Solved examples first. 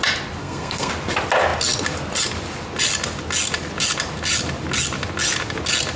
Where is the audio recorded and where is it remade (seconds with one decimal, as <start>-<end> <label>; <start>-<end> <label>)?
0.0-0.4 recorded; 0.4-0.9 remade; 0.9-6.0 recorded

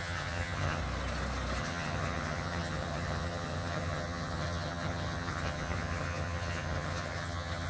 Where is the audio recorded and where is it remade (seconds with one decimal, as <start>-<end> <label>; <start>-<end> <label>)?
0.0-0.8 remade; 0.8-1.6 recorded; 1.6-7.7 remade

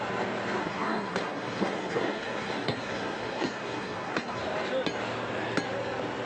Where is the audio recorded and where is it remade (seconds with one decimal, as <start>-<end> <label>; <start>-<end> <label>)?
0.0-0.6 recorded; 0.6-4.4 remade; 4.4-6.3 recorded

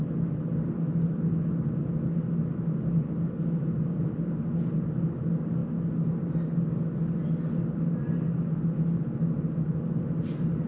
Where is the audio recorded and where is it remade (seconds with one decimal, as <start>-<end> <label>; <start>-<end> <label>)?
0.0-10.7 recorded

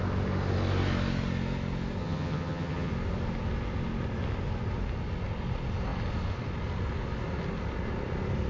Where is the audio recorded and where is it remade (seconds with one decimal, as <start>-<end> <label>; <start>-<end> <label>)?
0.0-2.0 recorded; 2.0-2.9 remade; 2.9-8.5 recorded

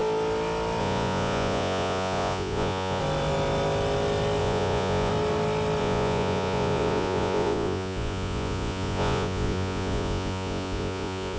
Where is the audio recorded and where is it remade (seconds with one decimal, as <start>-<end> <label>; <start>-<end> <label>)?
0.0-0.8 recorded; 0.8-3.0 remade; 3.0-4.4 recorded; 4.4-5.1 remade; 5.1-5.8 recorded; 5.8-11.4 remade

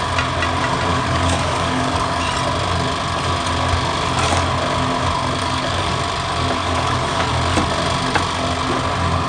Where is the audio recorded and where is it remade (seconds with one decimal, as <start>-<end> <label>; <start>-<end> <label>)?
0.0-0.9 recorded; 0.9-2.2 remade; 2.2-5.4 recorded; 5.4-5.9 remade; 5.9-6.6 recorded; 6.6-7.3 remade; 7.3-9.3 recorded

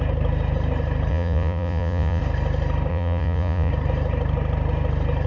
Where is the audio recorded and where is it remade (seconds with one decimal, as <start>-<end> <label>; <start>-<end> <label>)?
0.0-1.1 recorded; 1.1-2.2 remade; 2.2-2.9 recorded; 2.9-3.7 remade; 3.7-5.3 recorded